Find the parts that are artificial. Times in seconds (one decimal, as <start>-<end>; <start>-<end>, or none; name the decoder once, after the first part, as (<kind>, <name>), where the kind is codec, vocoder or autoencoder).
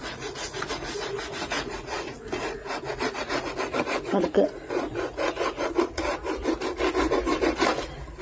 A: 0.0-6.0 (vocoder, Vocos)